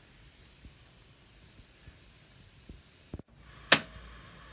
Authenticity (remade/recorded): recorded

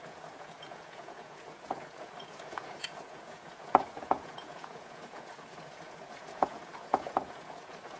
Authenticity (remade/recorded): remade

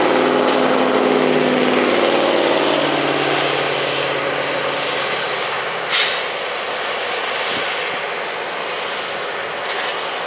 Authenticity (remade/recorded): recorded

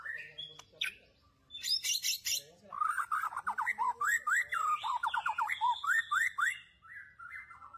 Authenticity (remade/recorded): recorded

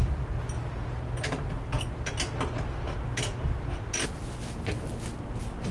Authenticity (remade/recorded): recorded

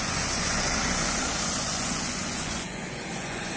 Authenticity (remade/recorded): remade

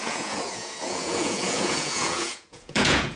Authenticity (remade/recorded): remade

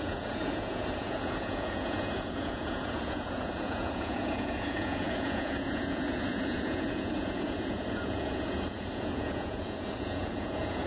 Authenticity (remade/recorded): remade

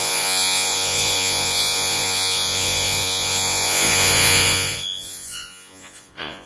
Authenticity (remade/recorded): remade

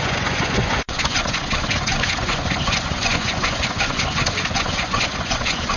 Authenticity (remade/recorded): remade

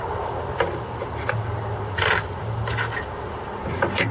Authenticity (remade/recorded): recorded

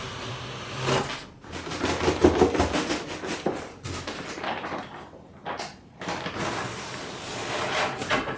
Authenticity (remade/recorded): recorded